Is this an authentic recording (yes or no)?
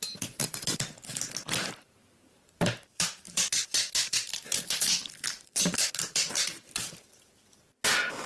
no